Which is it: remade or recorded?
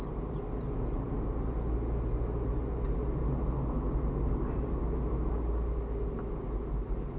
recorded